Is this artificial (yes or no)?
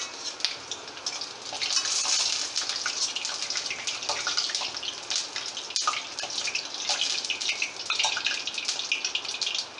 no